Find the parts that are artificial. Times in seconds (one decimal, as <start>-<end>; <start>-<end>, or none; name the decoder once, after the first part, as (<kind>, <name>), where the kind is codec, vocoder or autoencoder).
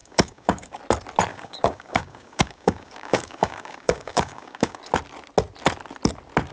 0.0-0.8 (codec, DAC); 1.3-4.8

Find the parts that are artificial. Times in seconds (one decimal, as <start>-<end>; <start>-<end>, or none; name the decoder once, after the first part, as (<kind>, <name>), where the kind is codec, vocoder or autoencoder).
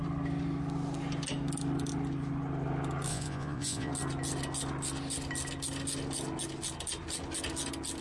3.1-3.9 (vocoder, Vocos)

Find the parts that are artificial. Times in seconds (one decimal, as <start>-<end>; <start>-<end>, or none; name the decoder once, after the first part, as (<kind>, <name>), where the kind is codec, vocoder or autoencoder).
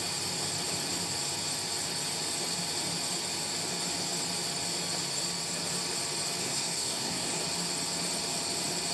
6.4-7.4 (codec, SNAC)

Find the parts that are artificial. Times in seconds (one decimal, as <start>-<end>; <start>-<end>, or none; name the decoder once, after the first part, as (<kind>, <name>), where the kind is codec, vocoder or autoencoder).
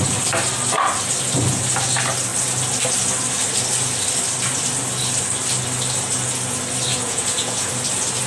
6.9-7.7 (vocoder, Vocos)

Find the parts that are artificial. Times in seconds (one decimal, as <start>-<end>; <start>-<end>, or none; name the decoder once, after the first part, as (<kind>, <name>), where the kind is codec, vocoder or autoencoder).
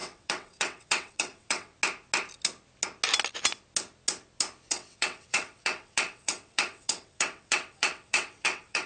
0.0-1.7 (vocoder, WaveNeXt); 4.7-8.9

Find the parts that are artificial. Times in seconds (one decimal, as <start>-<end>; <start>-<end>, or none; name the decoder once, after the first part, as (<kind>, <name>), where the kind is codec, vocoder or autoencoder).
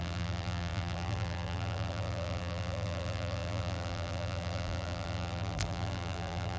0.0-6.6 (vocoder, BigVGAN v2)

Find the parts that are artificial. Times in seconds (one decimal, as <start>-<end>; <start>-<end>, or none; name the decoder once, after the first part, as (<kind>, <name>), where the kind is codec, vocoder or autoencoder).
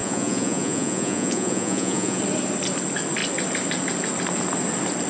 0.0-2.2 (vocoder, Vocos)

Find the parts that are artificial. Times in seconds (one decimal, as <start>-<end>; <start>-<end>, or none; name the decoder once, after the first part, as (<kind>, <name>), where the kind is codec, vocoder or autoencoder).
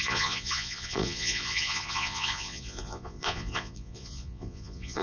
0.0-5.0 (vocoder, Vocos)